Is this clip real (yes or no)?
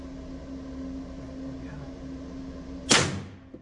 yes